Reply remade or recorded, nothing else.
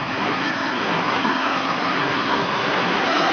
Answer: remade